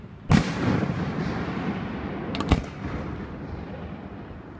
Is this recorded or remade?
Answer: recorded